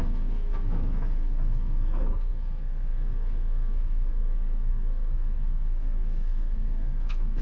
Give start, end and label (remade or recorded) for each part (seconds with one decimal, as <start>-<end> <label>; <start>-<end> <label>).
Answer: 0.0-7.4 remade

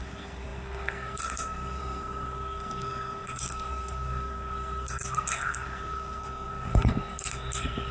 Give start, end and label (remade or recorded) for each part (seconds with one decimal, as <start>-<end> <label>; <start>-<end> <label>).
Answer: 0.0-7.9 remade